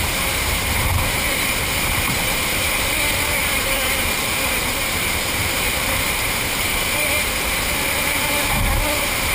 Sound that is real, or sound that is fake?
fake